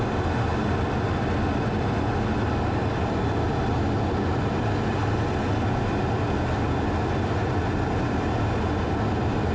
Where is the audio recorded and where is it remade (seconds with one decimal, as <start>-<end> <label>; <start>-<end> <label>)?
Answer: 0.0-9.5 recorded